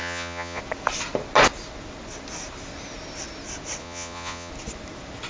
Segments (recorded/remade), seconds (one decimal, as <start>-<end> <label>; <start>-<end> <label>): 0.0-0.6 remade; 0.6-3.8 recorded; 3.8-4.5 remade; 4.5-5.3 recorded

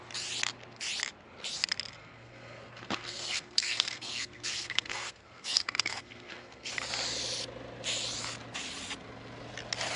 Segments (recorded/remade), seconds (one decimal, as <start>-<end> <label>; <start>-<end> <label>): 0.0-2.0 recorded; 2.0-6.7 remade; 6.7-10.0 recorded